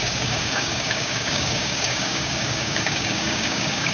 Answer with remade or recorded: remade